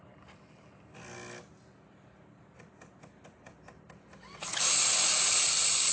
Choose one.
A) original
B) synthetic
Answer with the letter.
A